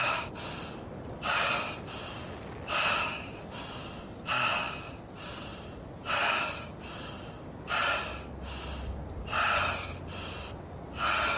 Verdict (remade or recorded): recorded